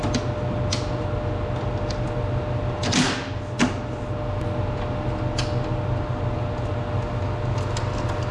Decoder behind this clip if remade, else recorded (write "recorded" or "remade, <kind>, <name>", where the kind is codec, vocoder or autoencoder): recorded